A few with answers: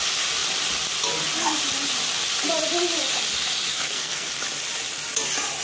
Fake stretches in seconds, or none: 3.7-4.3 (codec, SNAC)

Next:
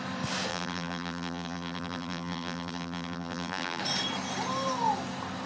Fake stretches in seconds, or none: 0.5-3.8 (vocoder, BigVGAN v2)

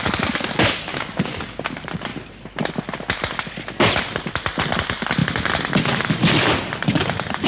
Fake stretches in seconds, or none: 0.9-1.6 (codec, DAC)

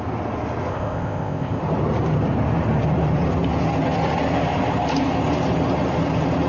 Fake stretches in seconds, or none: 0.7-1.6 (codec, ZipCodec)

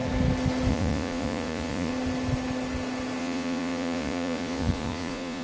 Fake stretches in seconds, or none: 0.7-1.9 (vocoder, Vocos); 3.2-5.4

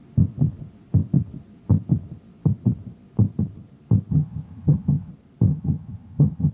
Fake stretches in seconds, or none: 4.1-5.1 (vocoder, HiFi-GAN); 5.5-6.5

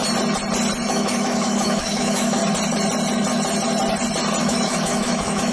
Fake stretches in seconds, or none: 0.9-2.4 (autoencoder, DAC-VAE); 4.4-5.5